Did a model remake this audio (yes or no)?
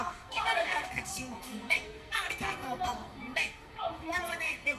yes